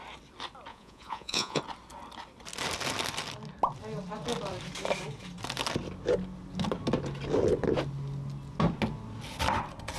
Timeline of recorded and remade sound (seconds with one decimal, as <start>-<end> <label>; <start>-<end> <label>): 0.0-0.7 recorded; 0.7-1.6 remade; 1.6-10.0 recorded